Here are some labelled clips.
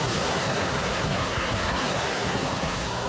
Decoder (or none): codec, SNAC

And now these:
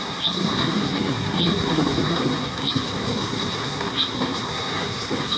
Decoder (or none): codec, SNAC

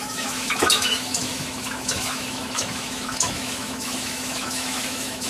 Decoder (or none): autoencoder, DAC-VAE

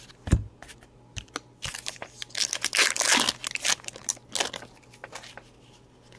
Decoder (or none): none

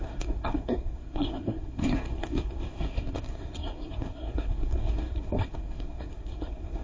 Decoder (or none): codec, SNAC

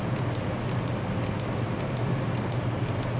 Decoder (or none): none